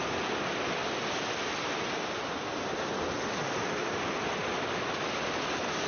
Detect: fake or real real